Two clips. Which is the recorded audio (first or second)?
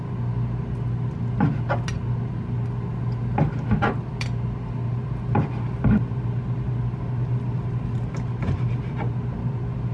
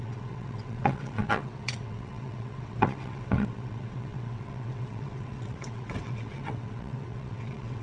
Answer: first